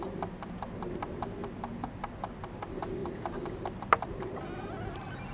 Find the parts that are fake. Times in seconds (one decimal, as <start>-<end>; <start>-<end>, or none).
none